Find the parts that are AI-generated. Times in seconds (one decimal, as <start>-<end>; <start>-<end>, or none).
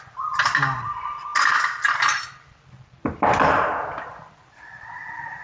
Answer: none